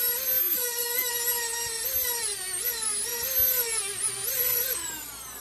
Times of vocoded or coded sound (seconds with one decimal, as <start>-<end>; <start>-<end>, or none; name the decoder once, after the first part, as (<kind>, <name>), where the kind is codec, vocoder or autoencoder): 0.4-1.1 (autoencoder, DAC-VAE)